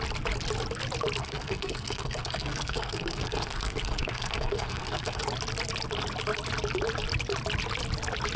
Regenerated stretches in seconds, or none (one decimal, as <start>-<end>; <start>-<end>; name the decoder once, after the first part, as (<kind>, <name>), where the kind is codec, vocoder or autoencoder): 1.2-5.2 (codec, SNAC)